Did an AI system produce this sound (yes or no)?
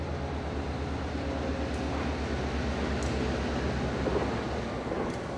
no